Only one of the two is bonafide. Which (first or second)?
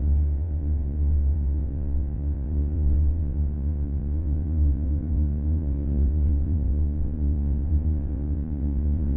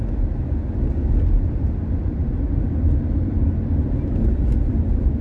second